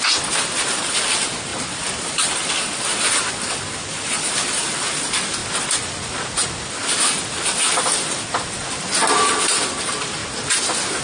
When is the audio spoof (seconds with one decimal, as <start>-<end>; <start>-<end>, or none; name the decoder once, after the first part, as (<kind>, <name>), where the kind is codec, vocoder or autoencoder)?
0.0-5.4 (vocoder, BigVGAN v2); 8.4-10.2